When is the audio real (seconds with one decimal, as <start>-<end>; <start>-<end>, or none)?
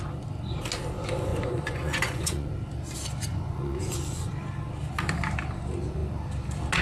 0.0-1.3; 2.5-3.3; 4.3-6.8